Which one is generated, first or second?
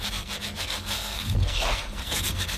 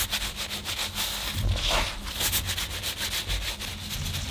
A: first